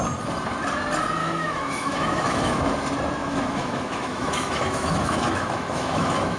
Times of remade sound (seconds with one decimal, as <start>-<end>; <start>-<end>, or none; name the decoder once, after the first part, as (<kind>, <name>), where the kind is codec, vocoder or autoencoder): 1.2-2.6 (autoencoder, DAC-VAE); 3.2-6.4